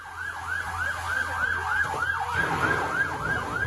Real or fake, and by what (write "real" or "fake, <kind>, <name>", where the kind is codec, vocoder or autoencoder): real